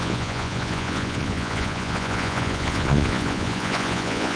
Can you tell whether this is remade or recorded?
remade